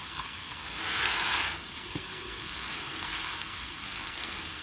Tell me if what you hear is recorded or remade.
remade